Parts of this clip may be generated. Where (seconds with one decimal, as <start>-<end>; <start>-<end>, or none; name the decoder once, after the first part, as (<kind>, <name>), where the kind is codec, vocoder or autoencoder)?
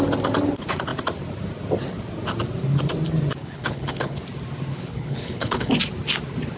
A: 3.4-4.2 (codec, HILCodec); 4.7-5.7